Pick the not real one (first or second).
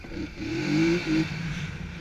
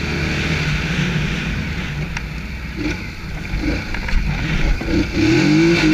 first